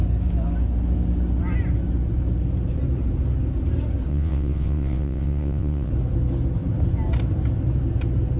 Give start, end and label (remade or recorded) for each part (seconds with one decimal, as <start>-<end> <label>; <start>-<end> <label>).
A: 0.0-4.1 recorded; 4.1-5.9 remade; 5.9-8.4 recorded